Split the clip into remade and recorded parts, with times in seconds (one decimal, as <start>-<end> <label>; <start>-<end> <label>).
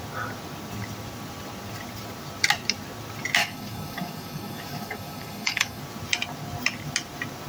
0.0-3.4 recorded; 3.4-5.8 remade; 5.8-7.5 recorded